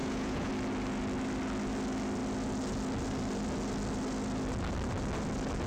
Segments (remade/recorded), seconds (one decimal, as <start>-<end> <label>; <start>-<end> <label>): 0.0-0.5 remade; 0.5-5.7 recorded